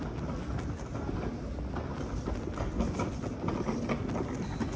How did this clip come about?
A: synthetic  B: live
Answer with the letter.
B